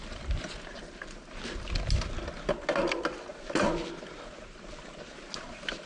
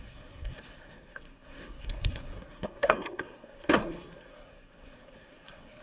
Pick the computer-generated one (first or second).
second